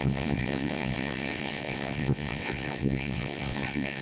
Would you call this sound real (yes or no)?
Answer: no